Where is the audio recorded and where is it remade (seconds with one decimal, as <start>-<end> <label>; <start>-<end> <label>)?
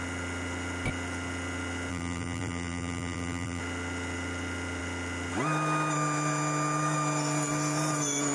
0.0-1.9 recorded; 1.9-3.6 remade; 3.6-8.3 recorded